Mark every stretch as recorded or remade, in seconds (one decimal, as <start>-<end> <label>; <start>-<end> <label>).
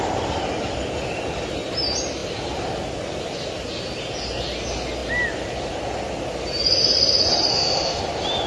0.0-7.5 recorded; 7.5-8.0 remade; 8.0-8.5 recorded